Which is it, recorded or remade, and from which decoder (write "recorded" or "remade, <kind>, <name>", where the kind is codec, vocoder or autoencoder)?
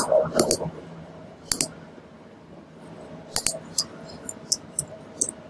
recorded